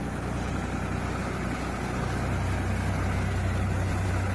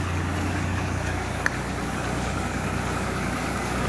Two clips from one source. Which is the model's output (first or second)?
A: second